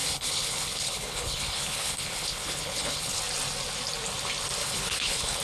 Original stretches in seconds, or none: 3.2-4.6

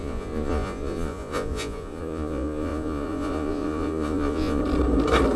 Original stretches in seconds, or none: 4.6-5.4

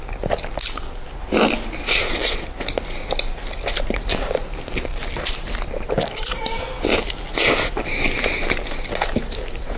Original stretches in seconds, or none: 0.0-9.8